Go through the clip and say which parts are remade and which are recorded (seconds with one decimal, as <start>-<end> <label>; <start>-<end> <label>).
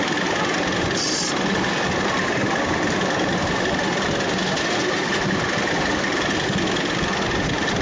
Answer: 0.0-7.8 recorded